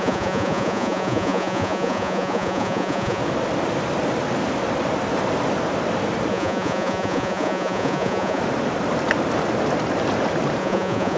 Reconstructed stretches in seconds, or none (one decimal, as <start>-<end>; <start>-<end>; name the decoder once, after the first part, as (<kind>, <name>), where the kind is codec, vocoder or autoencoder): 0.0-3.2 (vocoder, Vocos); 6.3-8.4; 10.6-11.2